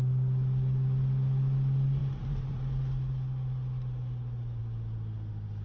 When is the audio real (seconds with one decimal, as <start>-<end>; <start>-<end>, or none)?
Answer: 0.0-5.6